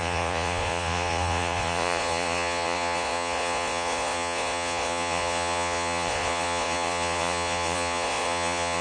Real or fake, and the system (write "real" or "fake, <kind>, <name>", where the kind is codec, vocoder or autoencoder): fake, vocoder, Vocos